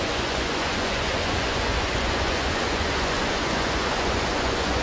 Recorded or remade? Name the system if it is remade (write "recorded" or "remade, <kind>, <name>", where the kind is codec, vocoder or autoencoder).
remade, vocoder, Vocos